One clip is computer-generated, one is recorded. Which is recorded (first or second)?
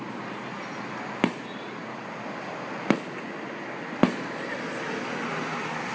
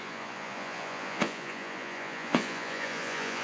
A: first